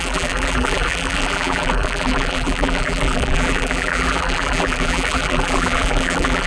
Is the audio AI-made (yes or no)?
yes